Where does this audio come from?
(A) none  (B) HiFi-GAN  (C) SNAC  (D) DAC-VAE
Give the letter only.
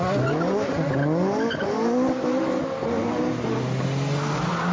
A